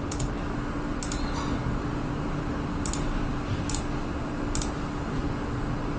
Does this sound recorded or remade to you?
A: recorded